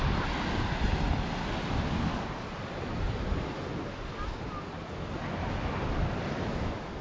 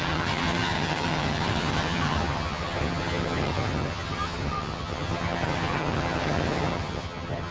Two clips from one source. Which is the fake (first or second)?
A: second